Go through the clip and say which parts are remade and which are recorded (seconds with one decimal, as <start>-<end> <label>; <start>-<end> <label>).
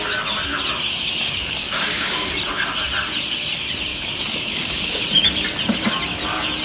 0.0-0.9 recorded; 0.9-2.3 remade; 2.3-3.9 recorded; 3.9-5.0 remade; 5.0-6.6 recorded